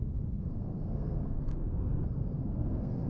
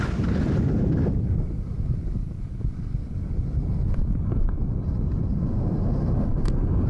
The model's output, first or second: first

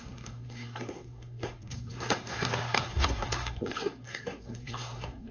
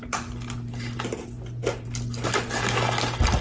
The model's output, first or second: first